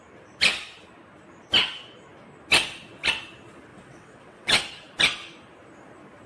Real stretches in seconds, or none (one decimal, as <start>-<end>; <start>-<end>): 0.0-3.7; 4.6-6.3